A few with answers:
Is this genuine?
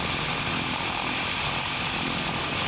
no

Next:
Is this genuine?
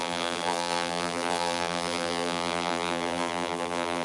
no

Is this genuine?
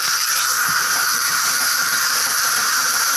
no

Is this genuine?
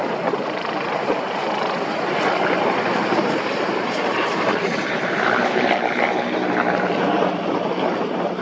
no